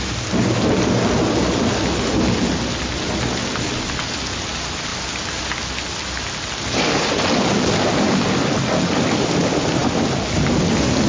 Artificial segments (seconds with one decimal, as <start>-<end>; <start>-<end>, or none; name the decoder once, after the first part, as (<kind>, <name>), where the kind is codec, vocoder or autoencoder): none